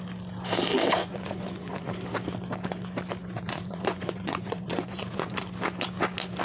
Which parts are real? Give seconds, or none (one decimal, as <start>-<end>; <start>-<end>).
0.0-1.0; 1.9-3.2; 5.4-6.4